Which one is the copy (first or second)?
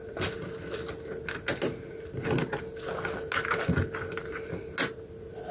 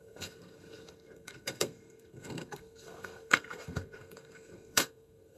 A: second